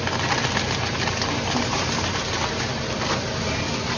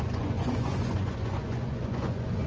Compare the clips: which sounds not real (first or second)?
second